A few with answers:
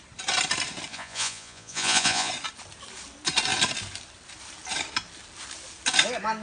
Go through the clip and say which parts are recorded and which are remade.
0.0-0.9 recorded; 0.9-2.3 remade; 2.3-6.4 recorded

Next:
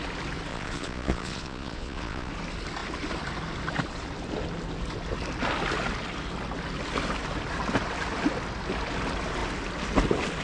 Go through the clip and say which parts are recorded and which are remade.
0.0-0.5 recorded; 0.5-2.3 remade; 2.3-10.4 recorded

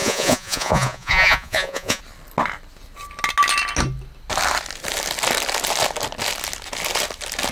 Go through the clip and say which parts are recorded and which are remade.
0.0-2.0 remade; 2.0-7.5 recorded

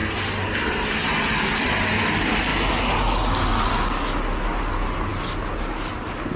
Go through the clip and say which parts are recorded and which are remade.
0.0-6.4 recorded

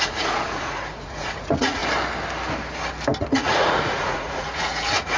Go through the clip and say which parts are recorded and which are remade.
0.0-1.8 remade; 1.8-3.2 recorded; 3.2-5.2 remade

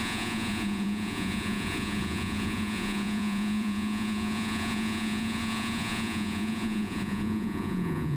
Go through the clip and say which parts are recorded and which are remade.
0.0-8.2 remade

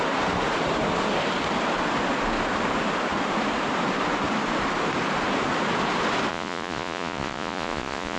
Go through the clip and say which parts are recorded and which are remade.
0.0-6.3 recorded; 6.3-8.2 remade